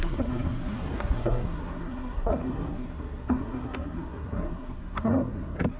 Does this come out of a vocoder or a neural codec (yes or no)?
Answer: yes